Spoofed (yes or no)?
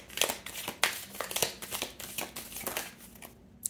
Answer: no